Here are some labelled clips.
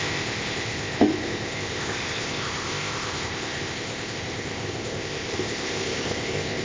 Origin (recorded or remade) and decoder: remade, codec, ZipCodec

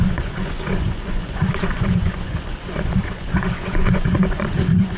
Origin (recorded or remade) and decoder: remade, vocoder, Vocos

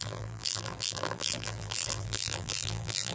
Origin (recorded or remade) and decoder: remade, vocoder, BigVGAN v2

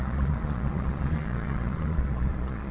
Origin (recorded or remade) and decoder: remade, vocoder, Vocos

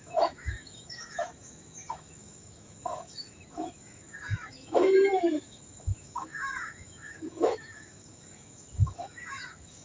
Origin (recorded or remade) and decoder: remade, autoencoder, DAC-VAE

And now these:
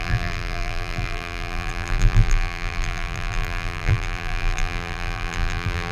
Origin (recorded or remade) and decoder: remade, vocoder, BigVGAN v2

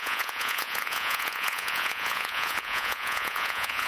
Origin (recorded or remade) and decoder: remade, vocoder, Vocos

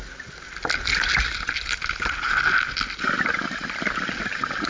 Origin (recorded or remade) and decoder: recorded